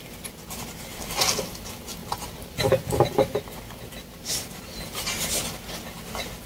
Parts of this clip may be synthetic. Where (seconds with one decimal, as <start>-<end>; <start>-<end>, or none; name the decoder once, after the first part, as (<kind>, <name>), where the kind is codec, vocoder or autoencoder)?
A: none